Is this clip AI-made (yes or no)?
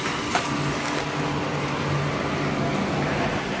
no